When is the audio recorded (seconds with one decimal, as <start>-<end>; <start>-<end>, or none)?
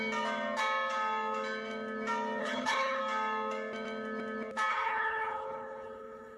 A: 0.0-2.4; 3.0-4.7